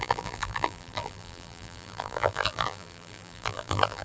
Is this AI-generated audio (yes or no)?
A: yes